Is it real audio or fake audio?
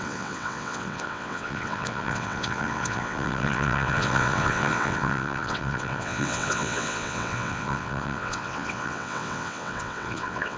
fake